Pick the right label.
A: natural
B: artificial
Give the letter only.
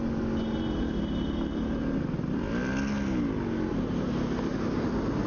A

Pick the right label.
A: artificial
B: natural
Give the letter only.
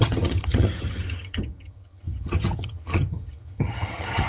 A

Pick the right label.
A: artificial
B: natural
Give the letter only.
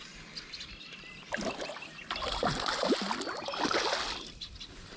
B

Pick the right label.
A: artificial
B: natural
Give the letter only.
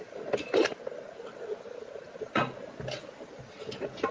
B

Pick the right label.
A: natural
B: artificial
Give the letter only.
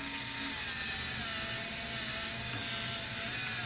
A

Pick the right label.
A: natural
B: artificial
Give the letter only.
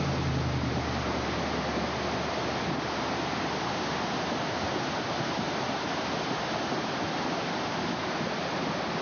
A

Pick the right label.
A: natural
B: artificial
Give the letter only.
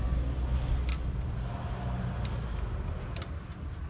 A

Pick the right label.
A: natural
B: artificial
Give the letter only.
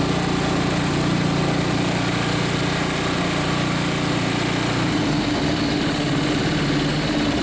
A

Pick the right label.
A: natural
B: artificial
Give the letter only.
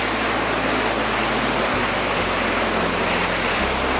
A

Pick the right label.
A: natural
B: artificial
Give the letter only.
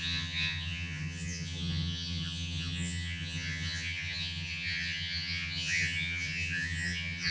B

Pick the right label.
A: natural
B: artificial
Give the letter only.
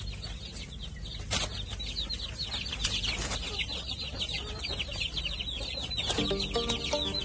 A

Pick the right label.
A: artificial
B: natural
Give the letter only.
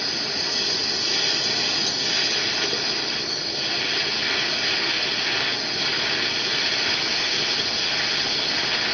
B